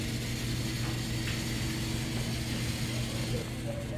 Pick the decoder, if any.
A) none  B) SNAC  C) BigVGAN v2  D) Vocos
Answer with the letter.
A